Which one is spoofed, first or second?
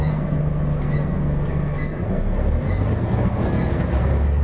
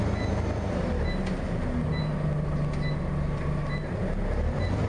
first